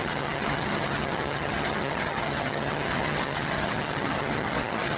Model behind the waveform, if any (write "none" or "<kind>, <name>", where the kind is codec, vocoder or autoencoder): vocoder, HiFi-GAN